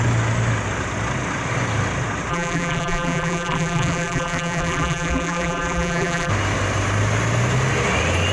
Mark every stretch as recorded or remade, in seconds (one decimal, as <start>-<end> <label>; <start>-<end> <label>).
0.0-2.3 recorded; 2.3-6.3 remade; 6.3-8.3 recorded